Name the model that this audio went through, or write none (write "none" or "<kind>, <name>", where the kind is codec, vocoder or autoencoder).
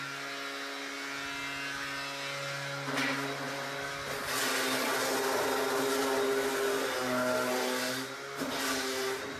none